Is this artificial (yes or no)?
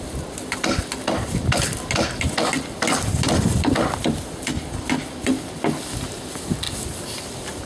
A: no